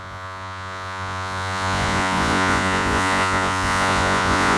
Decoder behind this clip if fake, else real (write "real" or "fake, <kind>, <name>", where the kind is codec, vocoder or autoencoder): fake, vocoder, Vocos